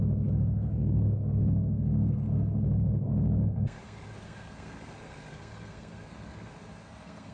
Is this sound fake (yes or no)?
yes